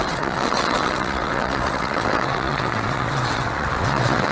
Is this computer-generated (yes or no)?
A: yes